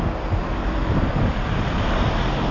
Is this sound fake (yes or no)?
yes